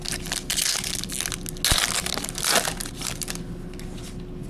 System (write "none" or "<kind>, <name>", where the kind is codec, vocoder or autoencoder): none